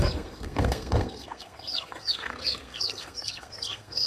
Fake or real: fake